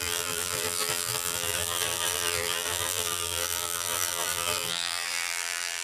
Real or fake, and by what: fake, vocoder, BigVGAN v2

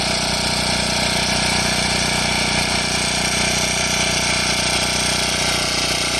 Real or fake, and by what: real